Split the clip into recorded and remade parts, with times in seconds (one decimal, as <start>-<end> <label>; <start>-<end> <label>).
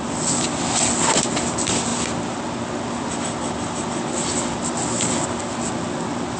0.0-6.4 recorded